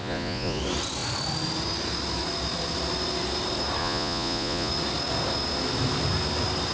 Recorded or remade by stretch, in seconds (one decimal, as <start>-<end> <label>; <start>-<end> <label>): 0.0-0.6 remade; 0.6-3.8 recorded; 3.8-4.7 remade; 4.7-6.7 recorded